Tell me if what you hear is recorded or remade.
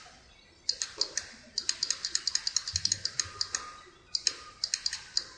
recorded